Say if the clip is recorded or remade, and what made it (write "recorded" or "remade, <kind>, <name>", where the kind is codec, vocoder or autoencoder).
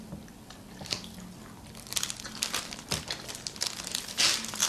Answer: recorded